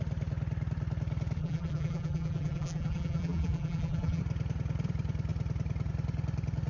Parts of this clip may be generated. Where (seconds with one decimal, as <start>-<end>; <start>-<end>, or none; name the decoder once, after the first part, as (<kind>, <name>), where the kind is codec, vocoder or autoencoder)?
1.4-4.2 (vocoder, BigVGAN v2)